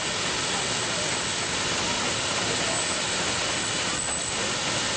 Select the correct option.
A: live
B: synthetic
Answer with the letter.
A